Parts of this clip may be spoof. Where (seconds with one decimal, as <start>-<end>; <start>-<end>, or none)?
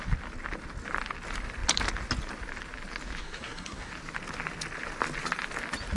3.2-3.9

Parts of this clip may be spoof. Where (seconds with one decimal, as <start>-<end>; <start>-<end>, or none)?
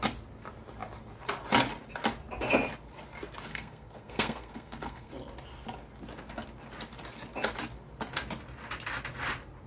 3.5-5.1